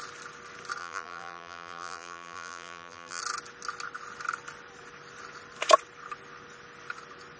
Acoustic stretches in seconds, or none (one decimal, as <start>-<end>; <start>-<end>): 0.0-0.8; 3.2-7.4